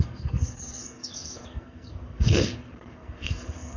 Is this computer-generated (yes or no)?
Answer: yes